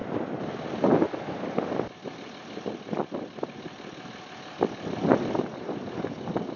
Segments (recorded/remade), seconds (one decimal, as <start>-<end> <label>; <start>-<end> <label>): 0.0-6.6 recorded